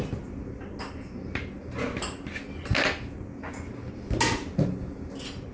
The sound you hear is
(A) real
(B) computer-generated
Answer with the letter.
A